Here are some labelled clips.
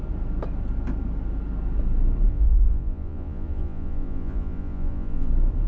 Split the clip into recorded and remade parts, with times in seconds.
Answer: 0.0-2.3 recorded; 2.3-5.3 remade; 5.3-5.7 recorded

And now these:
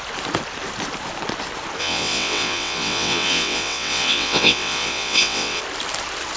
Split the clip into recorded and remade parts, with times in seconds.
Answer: 0.0-1.8 recorded; 1.8-5.6 remade; 5.6-6.4 recorded